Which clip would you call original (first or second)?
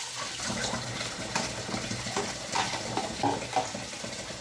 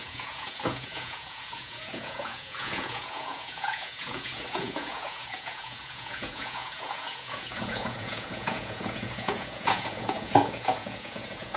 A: first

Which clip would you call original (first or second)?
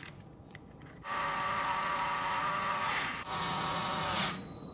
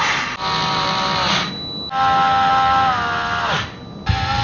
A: second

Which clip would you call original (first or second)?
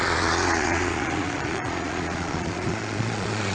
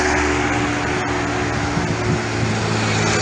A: second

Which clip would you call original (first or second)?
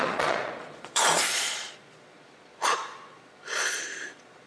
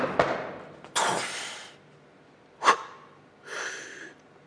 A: second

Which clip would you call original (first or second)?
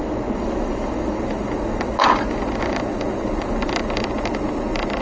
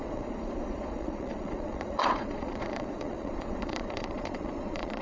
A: first